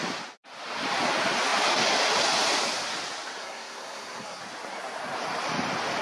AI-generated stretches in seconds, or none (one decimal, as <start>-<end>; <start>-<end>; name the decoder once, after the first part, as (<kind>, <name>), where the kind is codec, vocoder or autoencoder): 3.4-4.4 (codec, SNAC)

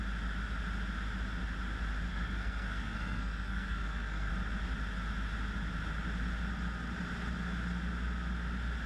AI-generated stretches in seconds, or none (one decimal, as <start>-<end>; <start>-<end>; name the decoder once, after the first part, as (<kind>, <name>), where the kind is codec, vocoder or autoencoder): 2.1-4.3 (codec, SNAC)

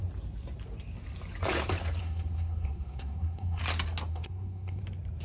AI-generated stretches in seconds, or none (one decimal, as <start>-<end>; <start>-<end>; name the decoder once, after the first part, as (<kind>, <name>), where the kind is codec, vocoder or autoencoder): 2.0-3.6 (codec, SNAC); 4.1-4.8

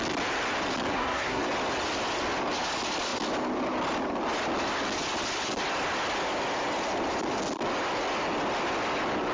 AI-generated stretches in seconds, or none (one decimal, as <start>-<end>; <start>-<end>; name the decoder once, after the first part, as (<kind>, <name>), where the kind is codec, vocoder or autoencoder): 0.9-1.4 (codec, SNAC)

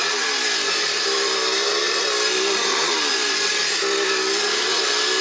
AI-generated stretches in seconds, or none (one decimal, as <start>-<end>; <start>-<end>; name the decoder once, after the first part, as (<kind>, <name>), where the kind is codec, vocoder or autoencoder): none